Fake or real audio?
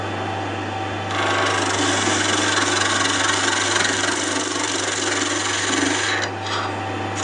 real